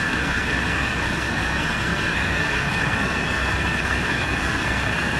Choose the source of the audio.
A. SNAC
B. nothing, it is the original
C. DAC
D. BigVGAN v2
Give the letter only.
A